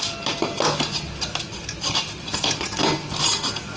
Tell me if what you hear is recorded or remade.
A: recorded